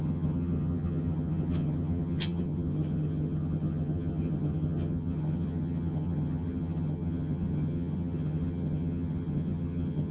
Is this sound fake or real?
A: fake